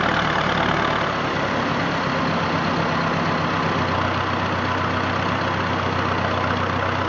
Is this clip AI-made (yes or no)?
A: no